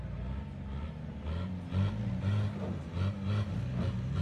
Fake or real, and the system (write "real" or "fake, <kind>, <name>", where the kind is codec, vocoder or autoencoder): real